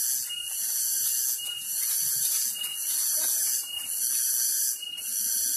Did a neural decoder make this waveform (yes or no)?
no